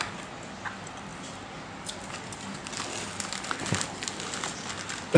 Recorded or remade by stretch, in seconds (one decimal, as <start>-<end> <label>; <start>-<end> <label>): 0.0-5.2 recorded